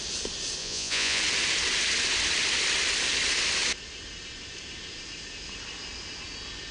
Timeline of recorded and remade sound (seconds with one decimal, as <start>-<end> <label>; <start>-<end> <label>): 0.0-0.6 recorded; 0.6-1.2 remade; 1.2-6.7 recorded